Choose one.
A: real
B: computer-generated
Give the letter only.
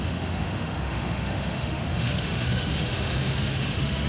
B